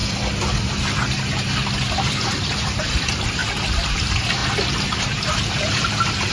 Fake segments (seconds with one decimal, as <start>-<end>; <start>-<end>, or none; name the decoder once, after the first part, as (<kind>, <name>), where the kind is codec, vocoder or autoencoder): 1.9-3.4 (vocoder, BigVGAN v2); 3.9-4.4; 5.0-6.3